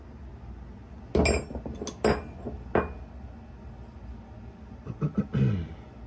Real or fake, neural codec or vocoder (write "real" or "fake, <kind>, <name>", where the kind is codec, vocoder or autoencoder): real